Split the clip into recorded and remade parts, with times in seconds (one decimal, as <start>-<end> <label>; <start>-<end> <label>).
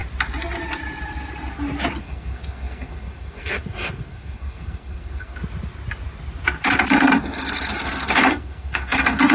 0.0-2.0 recorded; 2.0-5.4 remade; 5.4-6.9 recorded; 6.9-9.3 remade